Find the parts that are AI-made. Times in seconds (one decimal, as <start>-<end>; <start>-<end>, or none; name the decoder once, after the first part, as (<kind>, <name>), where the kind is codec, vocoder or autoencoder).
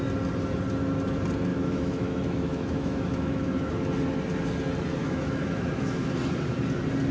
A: 1.5-3.7 (autoencoder, DAC-VAE); 5.0-6.1